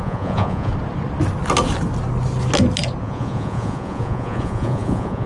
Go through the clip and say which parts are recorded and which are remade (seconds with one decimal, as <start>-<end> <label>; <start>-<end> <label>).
0.0-0.7 remade; 0.7-3.0 recorded; 3.0-5.3 remade